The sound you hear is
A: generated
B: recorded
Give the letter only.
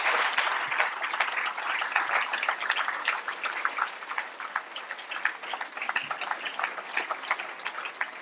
B